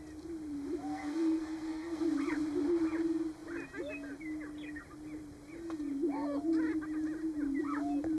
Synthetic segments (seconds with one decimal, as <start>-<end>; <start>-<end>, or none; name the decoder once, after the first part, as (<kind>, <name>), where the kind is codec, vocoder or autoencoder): 0.8-2.0 (codec, SNAC)